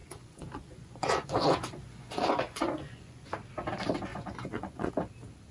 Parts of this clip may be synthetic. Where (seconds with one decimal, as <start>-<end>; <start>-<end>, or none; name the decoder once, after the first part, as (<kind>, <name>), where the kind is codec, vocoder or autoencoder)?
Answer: 0.0-3.3 (vocoder, Vocos); 4.1-4.9

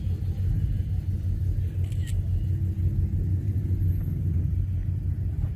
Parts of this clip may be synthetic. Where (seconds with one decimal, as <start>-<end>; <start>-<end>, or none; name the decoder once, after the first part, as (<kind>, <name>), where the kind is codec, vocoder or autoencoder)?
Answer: none